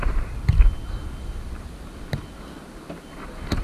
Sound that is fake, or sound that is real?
real